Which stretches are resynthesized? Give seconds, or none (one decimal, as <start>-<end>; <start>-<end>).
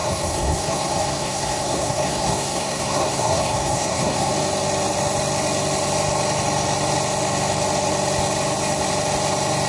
0.0-4.3